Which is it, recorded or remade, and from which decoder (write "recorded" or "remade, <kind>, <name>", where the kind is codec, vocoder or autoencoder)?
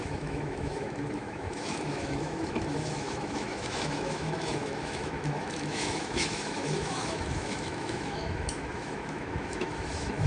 remade, autoencoder, DAC-VAE